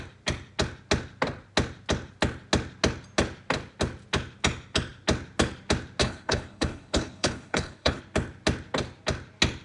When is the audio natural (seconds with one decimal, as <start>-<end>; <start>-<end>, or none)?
0.0-6.0; 8.0-9.6